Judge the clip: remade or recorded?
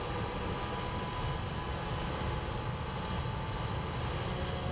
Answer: recorded